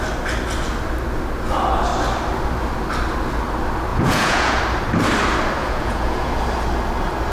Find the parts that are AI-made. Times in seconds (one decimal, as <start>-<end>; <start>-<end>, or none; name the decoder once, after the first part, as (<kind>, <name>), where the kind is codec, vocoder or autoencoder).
3.9-4.6 (vocoder, Vocos); 5.6-6.3